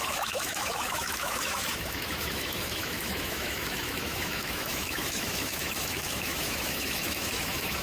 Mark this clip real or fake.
fake